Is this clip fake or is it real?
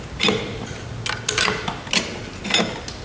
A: real